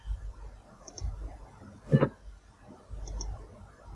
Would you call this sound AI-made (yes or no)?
no